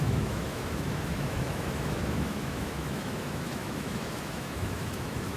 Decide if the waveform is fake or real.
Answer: fake